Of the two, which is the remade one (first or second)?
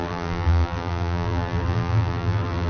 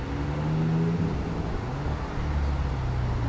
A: first